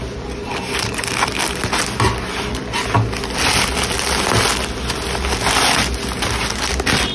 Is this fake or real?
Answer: real